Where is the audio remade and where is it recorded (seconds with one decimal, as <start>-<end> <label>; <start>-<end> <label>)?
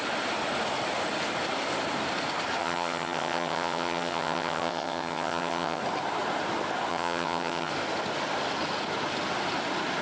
0.0-2.6 recorded; 2.6-5.8 remade; 5.8-6.9 recorded; 6.9-7.7 remade; 7.7-10.0 recorded